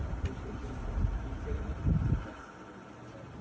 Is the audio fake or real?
real